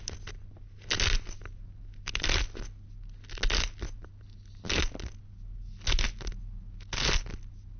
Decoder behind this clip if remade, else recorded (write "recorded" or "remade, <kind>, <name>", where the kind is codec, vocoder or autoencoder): recorded